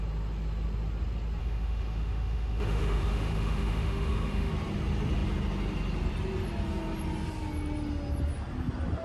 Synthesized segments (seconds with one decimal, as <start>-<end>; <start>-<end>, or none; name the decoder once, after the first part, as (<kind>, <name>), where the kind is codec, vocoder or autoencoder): 1.4-4.5 (autoencoder, DAC-VAE)